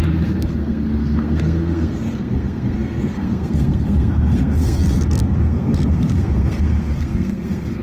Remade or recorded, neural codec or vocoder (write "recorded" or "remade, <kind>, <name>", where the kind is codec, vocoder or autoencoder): remade, codec, SNAC